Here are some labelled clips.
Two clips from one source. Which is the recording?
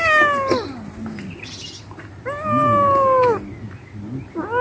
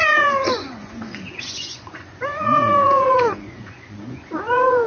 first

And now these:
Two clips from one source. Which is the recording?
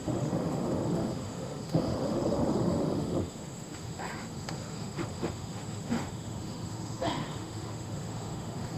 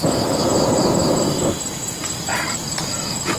second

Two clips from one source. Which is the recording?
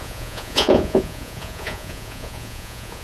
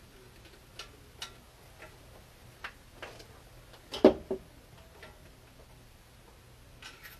second